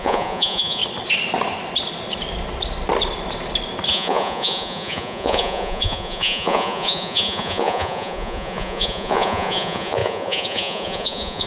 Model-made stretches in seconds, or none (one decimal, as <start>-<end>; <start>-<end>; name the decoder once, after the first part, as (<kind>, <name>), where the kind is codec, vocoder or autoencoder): 0.0-0.8 (vocoder, Vocos); 3.9-11.5